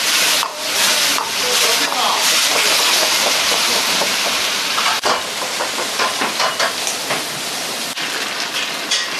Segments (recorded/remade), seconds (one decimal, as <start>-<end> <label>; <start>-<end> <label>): 0.0-0.5 remade; 0.5-2.0 recorded; 2.0-2.4 remade; 2.4-3.3 recorded; 3.3-6.5 remade; 6.5-9.2 recorded